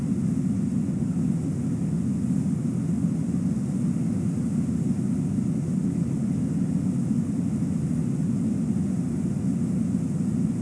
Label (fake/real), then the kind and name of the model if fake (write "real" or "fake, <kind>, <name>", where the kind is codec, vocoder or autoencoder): real